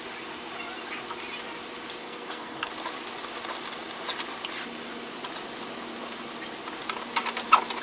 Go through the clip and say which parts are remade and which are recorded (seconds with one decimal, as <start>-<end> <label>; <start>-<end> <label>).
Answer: 0.0-2.0 recorded; 2.0-2.7 remade; 2.7-7.8 recorded